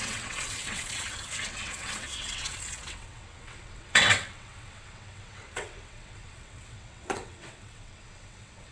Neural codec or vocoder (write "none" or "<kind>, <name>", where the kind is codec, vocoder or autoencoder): vocoder, WaveNeXt